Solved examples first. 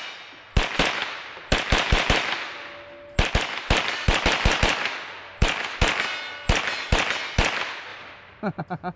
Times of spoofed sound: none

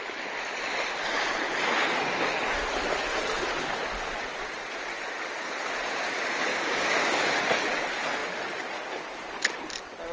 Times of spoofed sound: 6.5-7.3

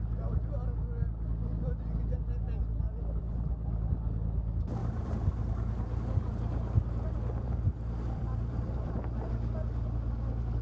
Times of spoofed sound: 3.2-3.9; 4.8-9.3

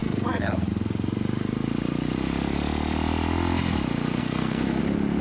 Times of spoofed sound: 0.0-0.7; 4.2-4.8

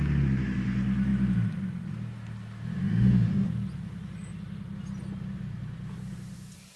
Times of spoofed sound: 2.8-3.5

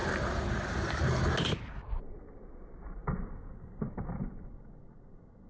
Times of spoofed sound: 3.0-4.2